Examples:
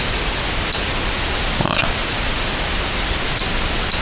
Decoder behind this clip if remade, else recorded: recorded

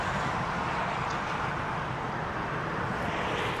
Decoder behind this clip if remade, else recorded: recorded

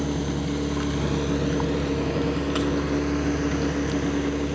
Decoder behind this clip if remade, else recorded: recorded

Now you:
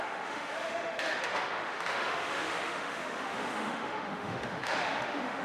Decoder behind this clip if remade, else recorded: remade, autoencoder, DAC-VAE